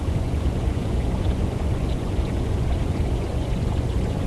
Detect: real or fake fake